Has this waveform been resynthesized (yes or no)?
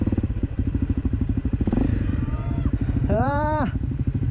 yes